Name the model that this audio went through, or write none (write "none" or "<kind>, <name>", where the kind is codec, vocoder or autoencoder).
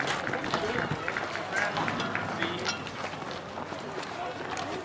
none